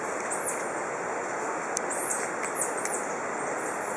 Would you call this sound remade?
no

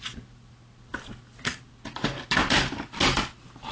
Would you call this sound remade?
no